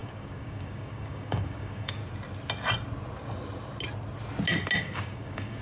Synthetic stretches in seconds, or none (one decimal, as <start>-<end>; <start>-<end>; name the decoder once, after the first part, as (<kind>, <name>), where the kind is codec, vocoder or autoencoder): 0.0-2.0 (codec, DAC); 4.8-5.6